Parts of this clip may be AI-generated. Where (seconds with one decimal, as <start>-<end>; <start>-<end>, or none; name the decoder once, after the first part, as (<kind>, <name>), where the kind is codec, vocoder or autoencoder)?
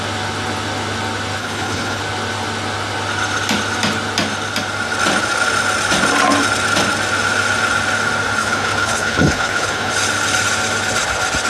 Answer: 1.4-2.0 (codec, HILCodec); 8.4-9.9